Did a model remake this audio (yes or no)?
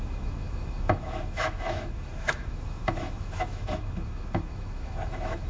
yes